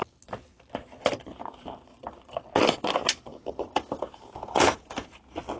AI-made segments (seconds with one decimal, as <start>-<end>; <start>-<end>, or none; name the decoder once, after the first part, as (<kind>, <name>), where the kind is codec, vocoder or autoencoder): 3.3-5.1 (vocoder, Vocos)